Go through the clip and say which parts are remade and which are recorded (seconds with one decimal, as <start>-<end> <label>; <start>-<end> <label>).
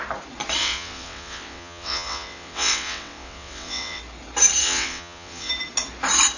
0.0-0.6 recorded; 0.6-4.0 remade; 4.0-4.6 recorded; 4.6-5.5 remade; 5.5-6.4 recorded